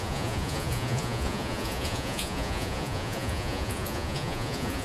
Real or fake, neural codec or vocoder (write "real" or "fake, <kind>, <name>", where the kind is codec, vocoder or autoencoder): fake, vocoder, Vocos